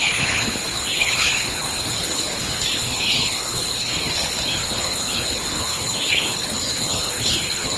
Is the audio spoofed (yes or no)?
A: yes